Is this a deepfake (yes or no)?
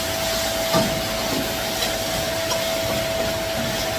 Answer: no